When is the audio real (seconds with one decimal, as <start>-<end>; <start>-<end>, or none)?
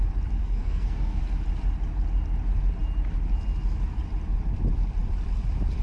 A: 0.0-0.4; 1.2-5.8